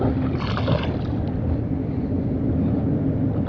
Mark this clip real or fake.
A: real